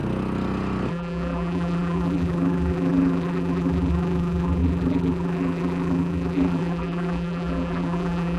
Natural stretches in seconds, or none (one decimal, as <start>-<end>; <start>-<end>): 0.0-0.9